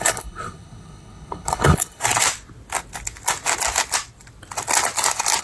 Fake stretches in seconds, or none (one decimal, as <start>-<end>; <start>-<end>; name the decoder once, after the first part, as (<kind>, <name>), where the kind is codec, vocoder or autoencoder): 0.0-2.0 (codec, HILCodec)